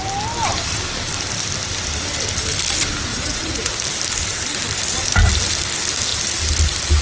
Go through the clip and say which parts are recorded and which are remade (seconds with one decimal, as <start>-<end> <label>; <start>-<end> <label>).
0.0-3.1 recorded; 3.1-3.7 remade; 3.7-7.0 recorded